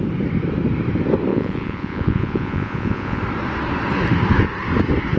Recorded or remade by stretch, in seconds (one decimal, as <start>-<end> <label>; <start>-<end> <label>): 0.0-1.3 recorded; 1.3-3.2 remade; 3.2-5.2 recorded